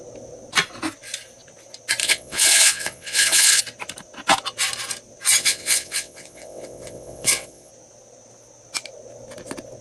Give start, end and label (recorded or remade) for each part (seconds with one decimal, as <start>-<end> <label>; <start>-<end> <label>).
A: 0.0-2.0 recorded; 2.0-3.6 remade; 3.6-5.4 recorded; 5.4-7.7 remade; 7.7-9.8 recorded